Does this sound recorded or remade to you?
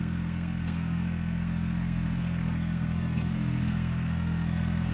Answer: remade